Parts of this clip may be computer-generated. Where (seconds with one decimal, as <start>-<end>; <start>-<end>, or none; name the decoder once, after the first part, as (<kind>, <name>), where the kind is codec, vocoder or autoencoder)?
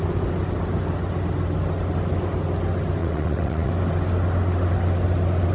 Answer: 3.0-3.7 (vocoder, WaveNeXt)